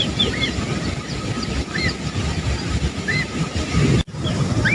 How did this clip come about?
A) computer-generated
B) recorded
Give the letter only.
B